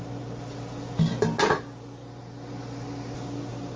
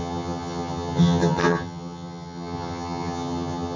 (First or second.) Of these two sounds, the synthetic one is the second